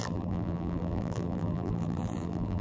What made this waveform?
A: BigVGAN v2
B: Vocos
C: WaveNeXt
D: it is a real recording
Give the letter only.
A